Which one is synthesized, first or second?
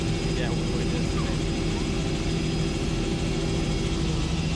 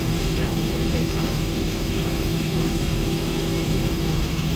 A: second